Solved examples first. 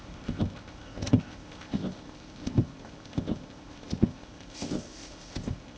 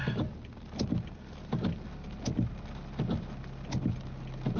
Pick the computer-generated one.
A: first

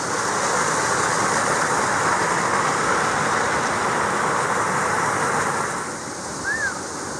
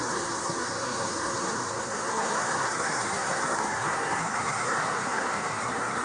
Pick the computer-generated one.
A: second